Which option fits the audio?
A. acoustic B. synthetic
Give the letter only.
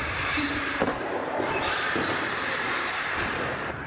B